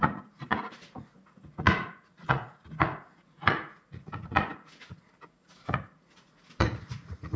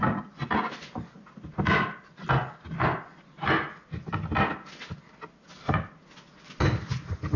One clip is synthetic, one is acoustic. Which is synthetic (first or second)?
first